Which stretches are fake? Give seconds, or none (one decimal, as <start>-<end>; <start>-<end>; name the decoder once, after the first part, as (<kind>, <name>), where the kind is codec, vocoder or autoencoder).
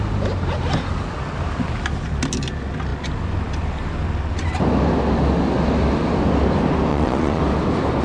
6.9-7.4 (vocoder, Vocos)